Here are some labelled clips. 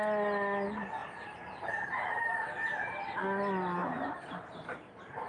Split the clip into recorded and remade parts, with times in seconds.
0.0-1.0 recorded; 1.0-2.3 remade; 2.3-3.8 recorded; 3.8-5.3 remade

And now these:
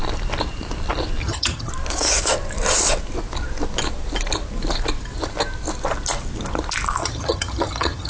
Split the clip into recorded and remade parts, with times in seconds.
0.0-1.2 recorded; 1.2-1.7 remade; 1.7-7.0 recorded; 7.0-8.1 remade